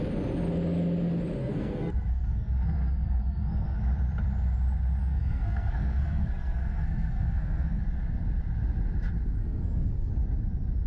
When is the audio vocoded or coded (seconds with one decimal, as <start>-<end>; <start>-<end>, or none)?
1.4-3.8; 5.0-7.8; 9.4-10.1

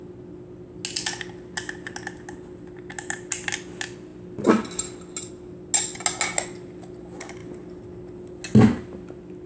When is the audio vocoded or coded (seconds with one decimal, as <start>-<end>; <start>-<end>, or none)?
none

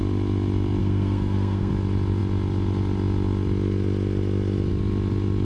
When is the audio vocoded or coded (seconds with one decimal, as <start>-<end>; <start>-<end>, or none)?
0.8-1.7